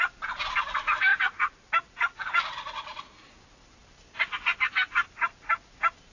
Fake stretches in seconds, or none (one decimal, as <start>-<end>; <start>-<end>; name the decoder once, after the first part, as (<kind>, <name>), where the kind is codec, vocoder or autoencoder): none